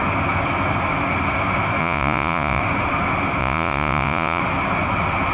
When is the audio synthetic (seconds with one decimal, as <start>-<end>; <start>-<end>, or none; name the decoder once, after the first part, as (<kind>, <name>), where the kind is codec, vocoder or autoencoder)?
1.8-2.6 (vocoder, Vocos); 3.4-4.4